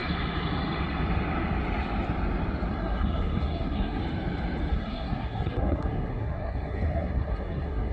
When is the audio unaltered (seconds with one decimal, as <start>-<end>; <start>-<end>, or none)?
0.0-2.7; 4.0-4.7